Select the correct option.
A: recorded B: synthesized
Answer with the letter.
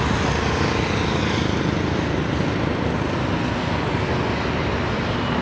A